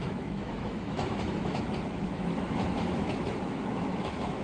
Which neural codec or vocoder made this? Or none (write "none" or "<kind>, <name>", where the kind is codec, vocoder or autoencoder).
autoencoder, DAC-VAE